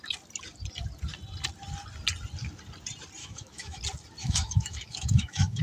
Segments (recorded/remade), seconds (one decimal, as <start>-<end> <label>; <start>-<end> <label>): 0.0-3.2 recorded; 3.2-3.8 remade; 3.8-4.2 recorded; 4.2-5.6 remade